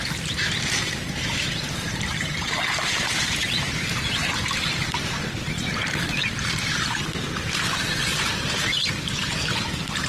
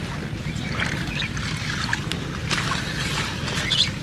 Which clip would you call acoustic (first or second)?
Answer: second